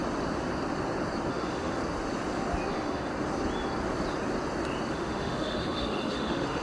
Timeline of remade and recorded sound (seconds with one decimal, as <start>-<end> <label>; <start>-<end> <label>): 0.0-1.3 recorded; 1.3-1.8 remade; 1.8-2.7 recorded; 2.7-3.1 remade; 3.1-4.9 recorded; 4.9-6.6 remade